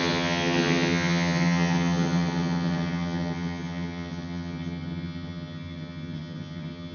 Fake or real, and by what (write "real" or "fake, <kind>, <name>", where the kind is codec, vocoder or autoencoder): fake, vocoder, HiFi-GAN